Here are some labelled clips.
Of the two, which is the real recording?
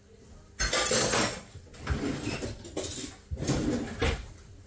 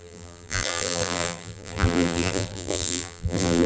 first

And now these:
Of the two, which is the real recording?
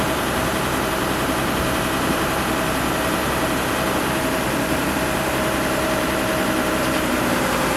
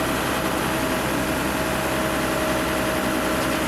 second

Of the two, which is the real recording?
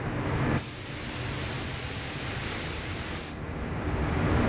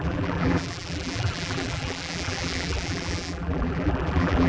first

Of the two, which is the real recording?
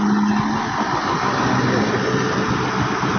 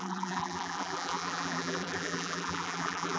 first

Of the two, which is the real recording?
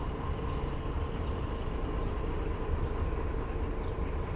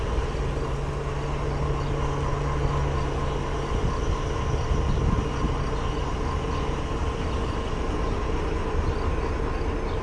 second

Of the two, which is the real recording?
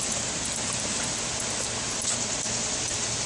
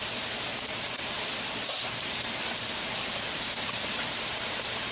first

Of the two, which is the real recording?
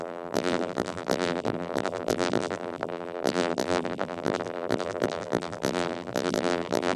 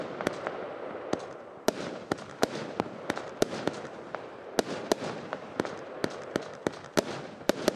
second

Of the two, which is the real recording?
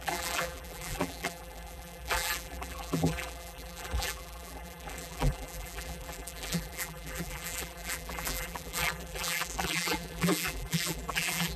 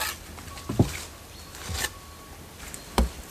second